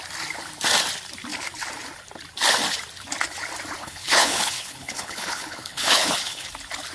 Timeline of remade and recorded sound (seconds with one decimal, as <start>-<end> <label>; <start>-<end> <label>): 0.0-3.8 recorded; 3.8-6.5 remade; 6.5-6.9 recorded